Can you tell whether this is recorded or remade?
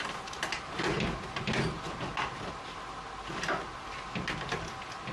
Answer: recorded